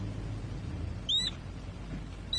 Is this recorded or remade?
recorded